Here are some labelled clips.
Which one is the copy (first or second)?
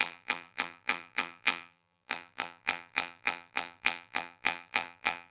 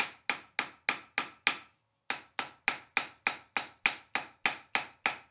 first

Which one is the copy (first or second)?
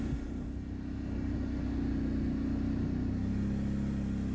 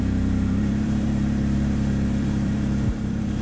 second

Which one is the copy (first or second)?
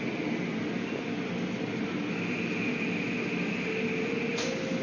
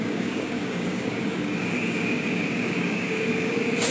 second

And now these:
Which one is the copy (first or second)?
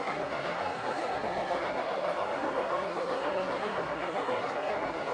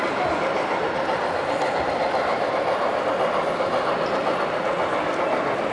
first